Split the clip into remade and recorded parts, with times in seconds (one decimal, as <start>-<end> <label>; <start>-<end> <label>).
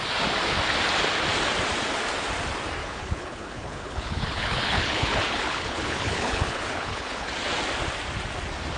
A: 0.0-2.8 recorded; 2.8-7.3 remade; 7.3-8.8 recorded